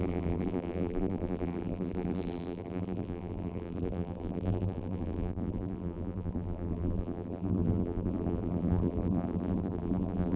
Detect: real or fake fake